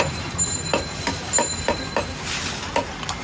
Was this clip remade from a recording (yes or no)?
no